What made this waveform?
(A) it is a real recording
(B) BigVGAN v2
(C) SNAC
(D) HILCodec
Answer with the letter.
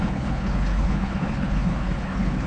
D